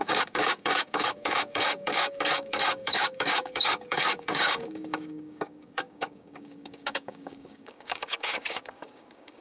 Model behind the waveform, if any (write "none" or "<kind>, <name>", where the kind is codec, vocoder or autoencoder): codec, DAC